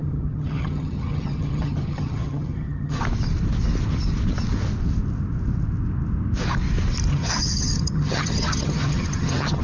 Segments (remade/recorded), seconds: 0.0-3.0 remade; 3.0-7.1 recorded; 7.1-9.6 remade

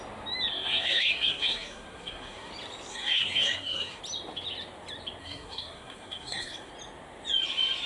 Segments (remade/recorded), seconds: 0.0-0.5 recorded; 0.5-2.5 remade; 2.5-2.9 recorded; 2.9-4.0 remade; 4.0-5.2 recorded; 5.2-6.7 remade; 6.7-7.9 recorded

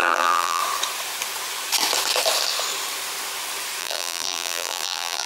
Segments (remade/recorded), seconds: 0.0-0.6 remade; 0.6-3.8 recorded; 3.8-5.3 remade

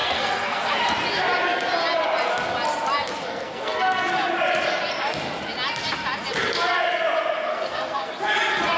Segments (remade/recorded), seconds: 0.0-0.8 remade; 0.8-3.1 recorded; 3.1-4.1 remade; 4.1-7.5 recorded; 7.5-8.1 remade; 8.1-8.8 recorded

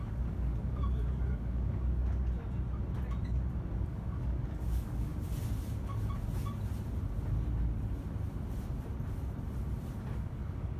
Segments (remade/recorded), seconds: 0.0-2.0 remade; 2.0-3.5 recorded; 3.5-5.1 remade; 5.1-10.1 recorded; 10.1-10.8 remade

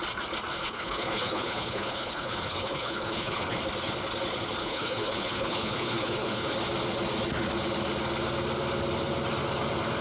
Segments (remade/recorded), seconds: 0.0-0.5 recorded; 0.5-3.6 remade; 3.6-4.6 recorded; 4.6-6.5 remade; 6.5-10.0 recorded

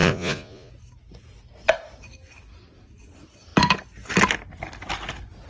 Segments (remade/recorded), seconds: 0.0-0.7 remade; 0.7-5.5 recorded